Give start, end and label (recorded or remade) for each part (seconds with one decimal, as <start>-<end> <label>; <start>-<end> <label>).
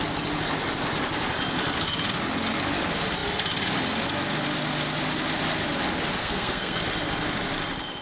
0.0-6.2 recorded; 6.2-6.8 remade; 6.8-8.0 recorded